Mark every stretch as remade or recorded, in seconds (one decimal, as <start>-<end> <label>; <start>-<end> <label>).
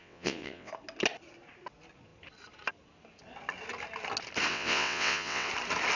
0.0-0.7 remade; 0.7-4.5 recorded; 4.5-5.5 remade; 5.5-6.0 recorded